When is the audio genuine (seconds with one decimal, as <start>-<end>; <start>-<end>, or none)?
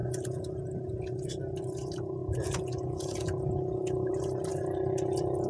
1.3-2.2; 4.1-5.5